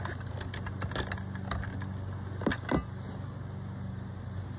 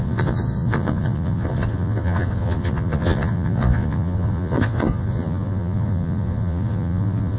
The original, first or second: first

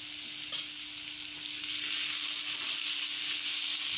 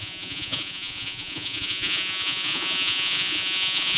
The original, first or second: first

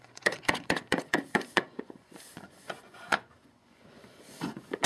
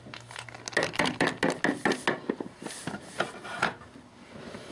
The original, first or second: second